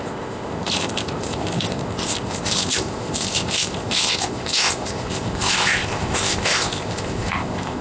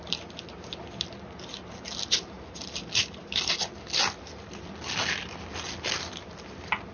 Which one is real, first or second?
second